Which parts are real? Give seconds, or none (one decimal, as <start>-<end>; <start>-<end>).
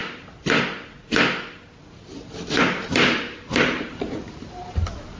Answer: 0.6-1.8